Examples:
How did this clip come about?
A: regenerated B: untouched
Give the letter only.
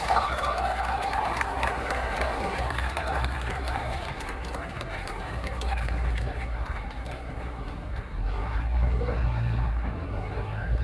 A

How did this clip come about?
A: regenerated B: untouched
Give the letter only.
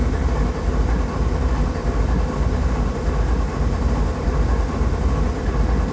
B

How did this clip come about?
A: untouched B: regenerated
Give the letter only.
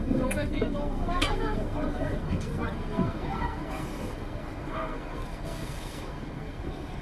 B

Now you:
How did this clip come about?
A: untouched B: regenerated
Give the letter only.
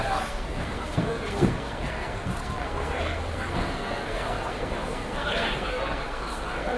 B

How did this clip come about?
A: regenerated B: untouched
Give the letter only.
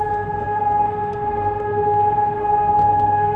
A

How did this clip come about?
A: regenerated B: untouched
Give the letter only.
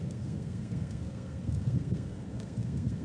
A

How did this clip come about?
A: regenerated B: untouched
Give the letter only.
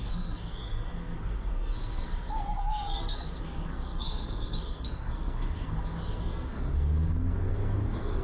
A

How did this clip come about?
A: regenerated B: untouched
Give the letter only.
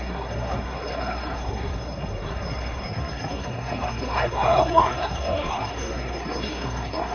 A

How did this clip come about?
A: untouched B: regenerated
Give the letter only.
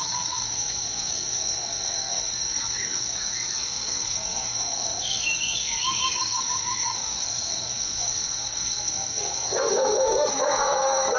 B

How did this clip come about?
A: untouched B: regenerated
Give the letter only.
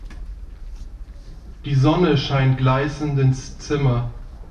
A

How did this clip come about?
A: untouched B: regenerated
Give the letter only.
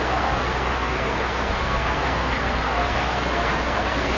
B